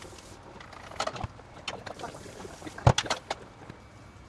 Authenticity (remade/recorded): recorded